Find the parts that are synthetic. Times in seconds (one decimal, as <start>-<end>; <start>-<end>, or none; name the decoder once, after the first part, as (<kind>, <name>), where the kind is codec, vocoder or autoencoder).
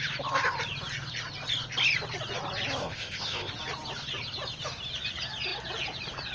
2.8-3.5 (codec, ZipCodec)